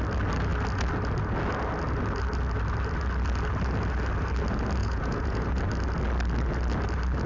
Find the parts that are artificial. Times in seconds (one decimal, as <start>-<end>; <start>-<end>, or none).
4.8-5.6